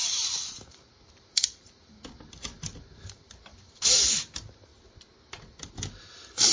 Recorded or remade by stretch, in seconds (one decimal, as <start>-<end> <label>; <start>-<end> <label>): 0.0-2.5 remade; 2.5-3.4 recorded; 3.4-4.7 remade; 4.7-5.7 recorded; 5.7-6.5 remade